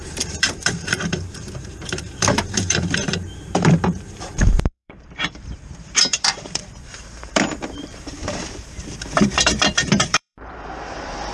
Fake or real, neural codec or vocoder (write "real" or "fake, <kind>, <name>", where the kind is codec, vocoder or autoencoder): fake, vocoder, BigVGAN v2